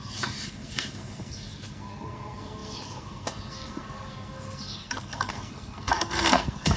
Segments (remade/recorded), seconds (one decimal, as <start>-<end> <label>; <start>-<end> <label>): 0.0-6.8 remade